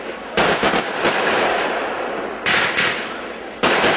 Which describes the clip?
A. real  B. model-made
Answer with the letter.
B